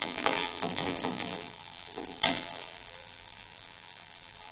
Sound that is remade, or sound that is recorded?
remade